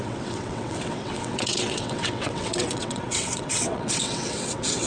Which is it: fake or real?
fake